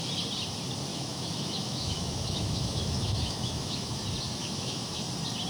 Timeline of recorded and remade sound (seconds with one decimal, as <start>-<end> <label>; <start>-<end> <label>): 0.0-0.9 recorded; 0.9-4.0 remade; 4.0-4.4 recorded; 4.4-5.0 remade; 5.0-5.5 recorded